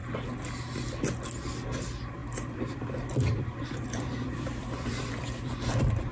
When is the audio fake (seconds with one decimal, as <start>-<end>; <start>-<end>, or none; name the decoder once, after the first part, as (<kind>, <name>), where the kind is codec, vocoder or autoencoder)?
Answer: 2.2-6.1 (vocoder, BigVGAN v2)